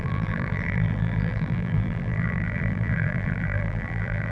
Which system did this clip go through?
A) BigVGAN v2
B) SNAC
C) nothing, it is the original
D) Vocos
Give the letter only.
A